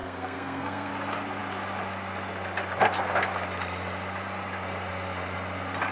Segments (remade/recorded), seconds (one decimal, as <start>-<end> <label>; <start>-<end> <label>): 0.0-0.9 remade; 0.9-5.9 recorded